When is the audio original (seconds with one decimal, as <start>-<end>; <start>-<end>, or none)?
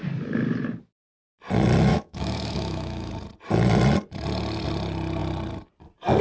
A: 0.0-1.9; 3.1-6.2